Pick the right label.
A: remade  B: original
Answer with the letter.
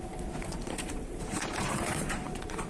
A